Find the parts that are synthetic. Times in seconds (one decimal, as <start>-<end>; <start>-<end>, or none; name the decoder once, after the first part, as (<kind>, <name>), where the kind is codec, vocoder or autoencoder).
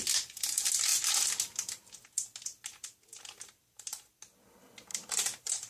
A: 4.9-5.7 (vocoder, BigVGAN v2)